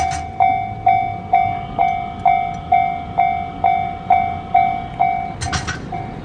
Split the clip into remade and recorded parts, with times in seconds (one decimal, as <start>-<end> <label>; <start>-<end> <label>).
0.0-6.2 recorded